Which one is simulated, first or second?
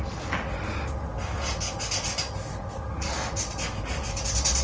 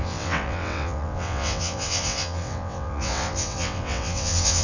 second